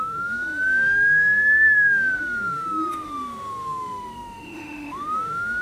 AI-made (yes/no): yes